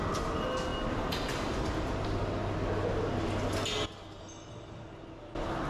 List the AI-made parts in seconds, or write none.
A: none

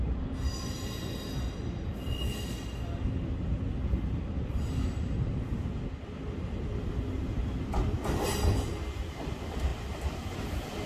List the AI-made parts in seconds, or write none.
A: none